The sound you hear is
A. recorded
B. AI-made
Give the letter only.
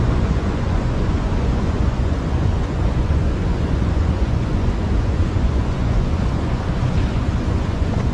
B